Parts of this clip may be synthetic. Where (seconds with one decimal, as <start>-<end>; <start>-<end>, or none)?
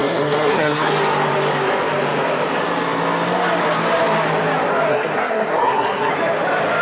0.0-0.9; 4.9-6.1